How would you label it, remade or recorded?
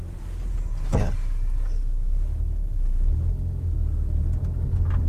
recorded